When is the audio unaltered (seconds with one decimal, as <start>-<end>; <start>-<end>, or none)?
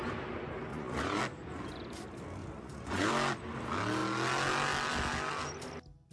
0.0-0.7; 1.2-2.4; 3.1-6.1